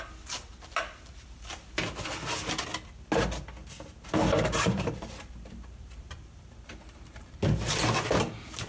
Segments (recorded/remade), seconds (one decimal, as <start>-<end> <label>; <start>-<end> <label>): 0.0-3.6 recorded; 3.6-7.7 remade; 7.7-8.7 recorded